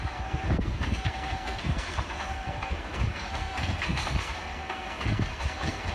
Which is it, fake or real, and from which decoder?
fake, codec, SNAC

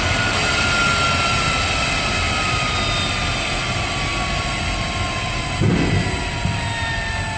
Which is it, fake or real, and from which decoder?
real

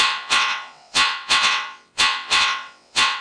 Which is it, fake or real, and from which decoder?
fake, vocoder, WaveNeXt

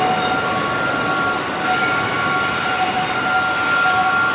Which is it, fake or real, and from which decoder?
real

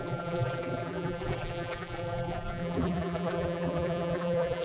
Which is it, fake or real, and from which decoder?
fake, vocoder, BigVGAN v2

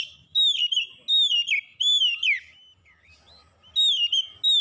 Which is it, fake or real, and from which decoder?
real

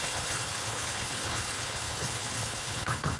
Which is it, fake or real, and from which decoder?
fake, codec, HILCodec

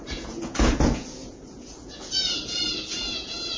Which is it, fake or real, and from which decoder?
fake, vocoder, Vocos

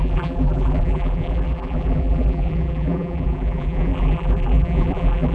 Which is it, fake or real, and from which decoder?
fake, vocoder, BigVGAN v2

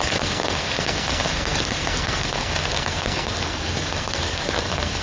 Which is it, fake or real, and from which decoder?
fake, codec, SNAC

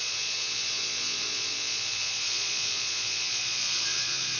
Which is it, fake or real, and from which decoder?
fake, vocoder, Vocos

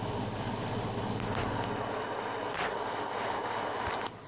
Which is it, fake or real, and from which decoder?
real